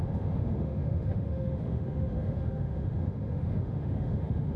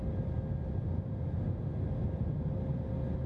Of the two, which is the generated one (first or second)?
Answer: first